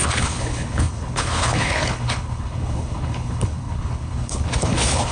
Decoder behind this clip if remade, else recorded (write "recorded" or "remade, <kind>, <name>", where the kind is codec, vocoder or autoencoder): remade, codec, HILCodec